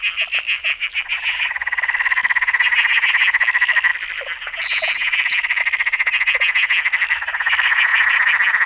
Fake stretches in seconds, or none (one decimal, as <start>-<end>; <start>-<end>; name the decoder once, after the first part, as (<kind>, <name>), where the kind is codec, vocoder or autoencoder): 1.1-1.8 (vocoder, Vocos)